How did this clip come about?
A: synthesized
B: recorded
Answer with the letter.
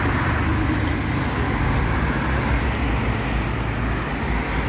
B